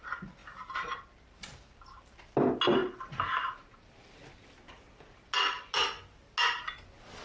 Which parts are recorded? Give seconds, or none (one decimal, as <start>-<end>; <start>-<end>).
0.0-7.2